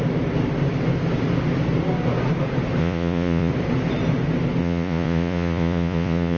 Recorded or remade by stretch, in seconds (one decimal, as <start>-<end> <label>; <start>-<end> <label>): 0.0-2.8 recorded; 2.8-3.5 remade; 3.5-4.6 recorded; 4.6-6.4 remade